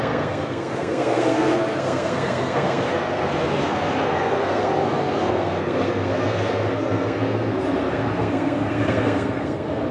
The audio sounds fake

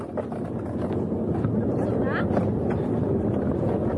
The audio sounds real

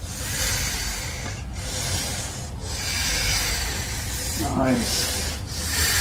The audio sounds real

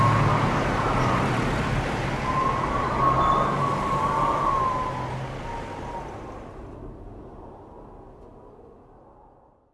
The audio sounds real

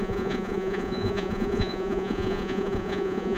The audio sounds fake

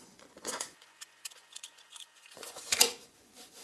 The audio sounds fake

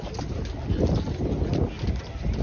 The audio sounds real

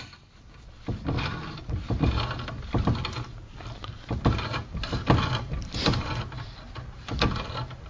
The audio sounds real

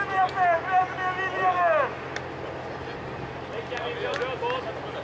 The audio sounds real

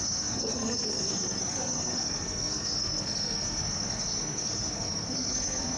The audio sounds fake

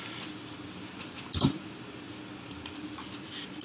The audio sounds fake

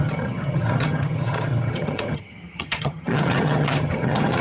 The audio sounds fake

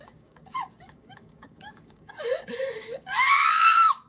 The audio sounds fake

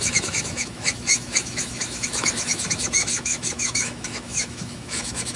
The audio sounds fake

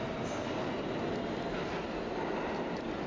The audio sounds real